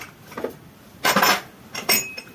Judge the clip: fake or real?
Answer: real